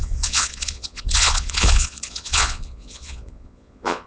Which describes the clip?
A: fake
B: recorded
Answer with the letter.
A